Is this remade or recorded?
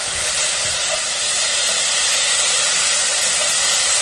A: recorded